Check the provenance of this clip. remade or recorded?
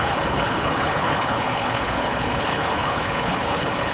remade